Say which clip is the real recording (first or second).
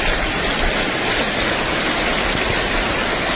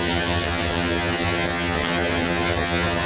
first